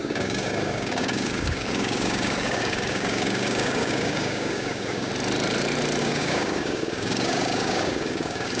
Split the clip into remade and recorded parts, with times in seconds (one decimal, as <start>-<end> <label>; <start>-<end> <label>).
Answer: 0.0-5.1 remade; 5.1-6.0 recorded; 6.0-8.6 remade

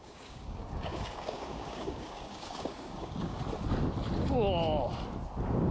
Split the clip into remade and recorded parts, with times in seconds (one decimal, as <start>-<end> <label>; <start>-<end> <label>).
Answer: 0.0-3.4 remade; 3.4-5.7 recorded

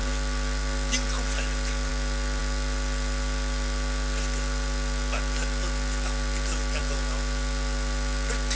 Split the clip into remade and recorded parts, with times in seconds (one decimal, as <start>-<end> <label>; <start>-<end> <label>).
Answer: 0.0-8.5 recorded

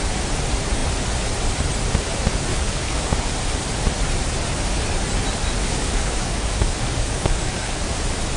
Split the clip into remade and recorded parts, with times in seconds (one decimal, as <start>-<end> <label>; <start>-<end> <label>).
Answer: 0.0-2.5 recorded; 2.5-3.3 remade; 3.3-5.6 recorded; 5.6-7.9 remade; 7.9-8.4 recorded

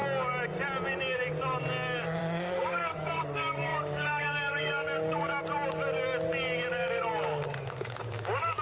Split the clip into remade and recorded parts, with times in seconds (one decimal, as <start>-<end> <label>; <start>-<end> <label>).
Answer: 0.0-2.2 recorded; 2.2-5.4 remade; 5.4-6.7 recorded; 6.7-8.6 remade

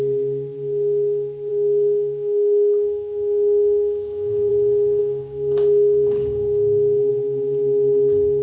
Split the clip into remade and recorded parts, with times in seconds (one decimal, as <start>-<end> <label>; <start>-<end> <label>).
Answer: 0.0-1.5 recorded; 1.5-4.5 remade; 4.5-5.0 recorded; 5.0-7.1 remade; 7.1-8.4 recorded

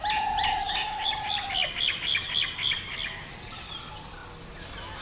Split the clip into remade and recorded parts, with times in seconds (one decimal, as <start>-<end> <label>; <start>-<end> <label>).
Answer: 0.0-0.6 recorded; 0.6-1.2 remade; 1.2-5.0 recorded

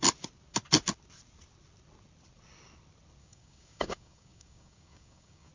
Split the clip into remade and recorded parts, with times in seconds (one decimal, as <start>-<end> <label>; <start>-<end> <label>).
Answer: 0.0-3.2 recorded; 3.2-5.5 remade